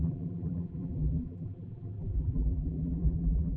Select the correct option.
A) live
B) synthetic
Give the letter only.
B